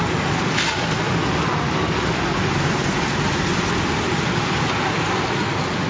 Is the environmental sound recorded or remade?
recorded